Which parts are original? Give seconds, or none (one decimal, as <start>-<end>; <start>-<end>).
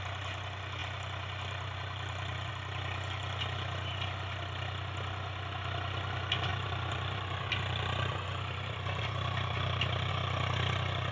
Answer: 0.0-0.8; 2.5-6.5; 10.1-11.1